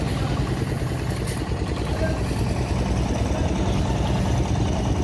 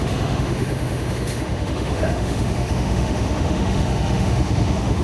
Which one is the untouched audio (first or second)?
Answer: first